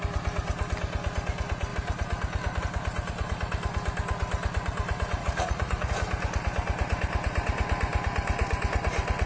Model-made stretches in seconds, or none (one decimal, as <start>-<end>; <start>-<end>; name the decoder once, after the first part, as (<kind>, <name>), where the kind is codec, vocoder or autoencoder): 5.2-5.9 (vocoder, Vocos)